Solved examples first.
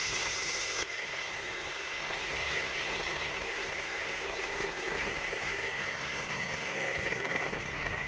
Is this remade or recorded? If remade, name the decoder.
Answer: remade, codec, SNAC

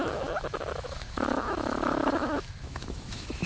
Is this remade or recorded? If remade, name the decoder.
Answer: remade, autoencoder, DAC-VAE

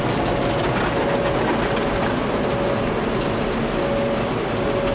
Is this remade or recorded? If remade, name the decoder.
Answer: recorded